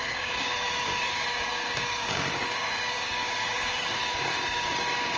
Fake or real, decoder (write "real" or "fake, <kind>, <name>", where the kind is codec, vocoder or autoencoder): fake, codec, DAC